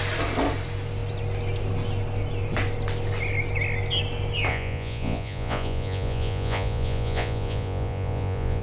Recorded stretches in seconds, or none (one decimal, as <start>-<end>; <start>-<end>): 0.0-4.5